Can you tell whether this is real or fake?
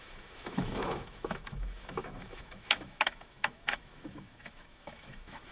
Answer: fake